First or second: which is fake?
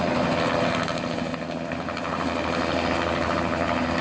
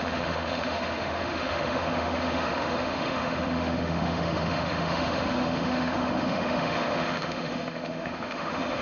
second